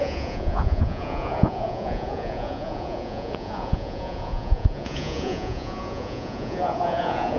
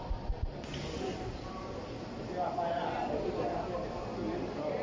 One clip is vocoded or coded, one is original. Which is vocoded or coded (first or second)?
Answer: first